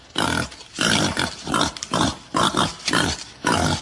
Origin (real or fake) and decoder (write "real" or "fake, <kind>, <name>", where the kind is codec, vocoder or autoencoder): real